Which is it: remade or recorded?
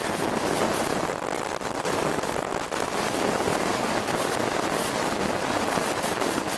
recorded